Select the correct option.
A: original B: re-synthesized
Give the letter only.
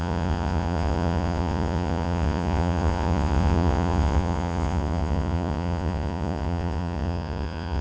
B